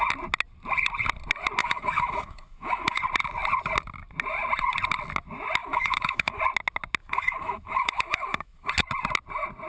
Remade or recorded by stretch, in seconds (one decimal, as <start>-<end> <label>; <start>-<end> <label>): 0.0-1.6 recorded; 1.6-3.0 remade; 3.0-5.6 recorded; 5.6-6.4 remade; 6.4-7.0 recorded; 7.0-8.7 remade; 8.7-9.7 recorded